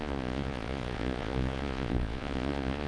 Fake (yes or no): yes